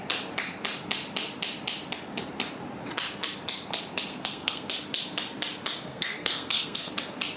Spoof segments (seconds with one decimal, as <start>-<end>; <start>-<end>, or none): 4.1-4.7; 5.9-6.9